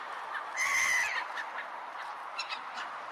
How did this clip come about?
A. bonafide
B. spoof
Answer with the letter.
A